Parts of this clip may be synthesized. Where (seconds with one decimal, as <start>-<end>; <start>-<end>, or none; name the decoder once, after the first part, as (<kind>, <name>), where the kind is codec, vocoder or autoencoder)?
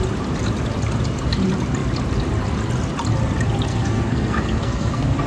3.7-5.3 (codec, SNAC)